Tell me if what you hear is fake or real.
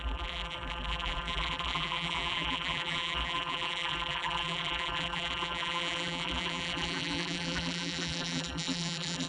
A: fake